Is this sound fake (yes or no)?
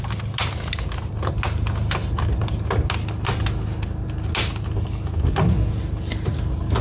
no